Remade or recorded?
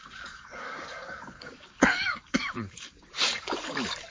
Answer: remade